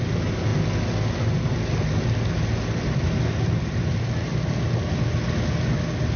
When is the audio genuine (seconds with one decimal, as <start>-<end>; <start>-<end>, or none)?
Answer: 0.0-6.2